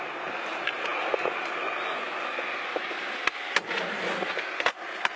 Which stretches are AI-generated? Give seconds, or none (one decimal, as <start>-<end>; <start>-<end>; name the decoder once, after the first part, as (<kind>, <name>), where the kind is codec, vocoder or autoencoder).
none